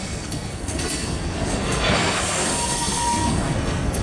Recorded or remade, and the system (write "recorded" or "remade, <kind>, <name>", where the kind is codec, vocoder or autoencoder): remade, codec, SNAC